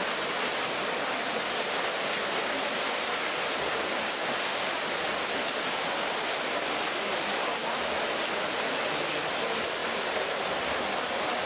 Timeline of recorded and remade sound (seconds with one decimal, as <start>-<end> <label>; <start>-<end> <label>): 0.0-11.5 recorded